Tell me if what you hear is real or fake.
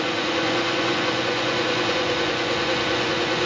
fake